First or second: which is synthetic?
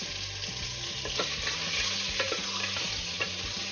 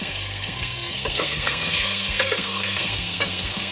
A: second